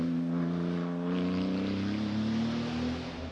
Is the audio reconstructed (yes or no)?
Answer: no